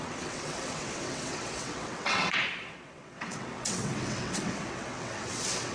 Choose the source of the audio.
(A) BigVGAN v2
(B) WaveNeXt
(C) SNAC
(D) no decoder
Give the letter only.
B